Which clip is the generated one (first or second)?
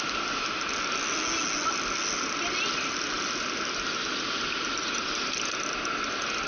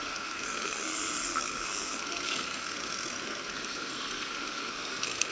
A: second